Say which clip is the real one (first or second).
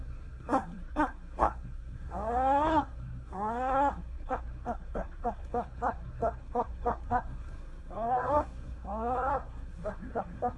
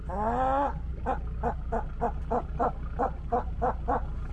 second